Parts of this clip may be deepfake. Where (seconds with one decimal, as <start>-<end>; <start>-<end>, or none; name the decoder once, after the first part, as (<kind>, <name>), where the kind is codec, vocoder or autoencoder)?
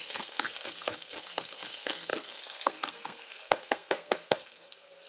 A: 0.0-5.1 (codec, SNAC)